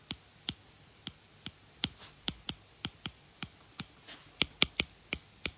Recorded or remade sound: recorded